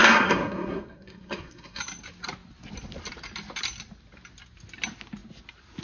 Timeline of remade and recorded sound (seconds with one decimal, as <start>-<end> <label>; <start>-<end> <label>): 0.0-1.8 remade; 1.8-5.8 recorded